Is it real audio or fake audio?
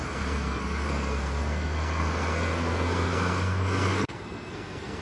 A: fake